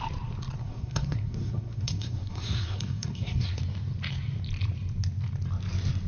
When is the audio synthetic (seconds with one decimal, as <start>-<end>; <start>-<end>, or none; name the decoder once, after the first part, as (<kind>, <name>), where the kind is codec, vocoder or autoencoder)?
0.6-3.6 (codec, SNAC)